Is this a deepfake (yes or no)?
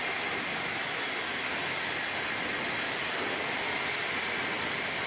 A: no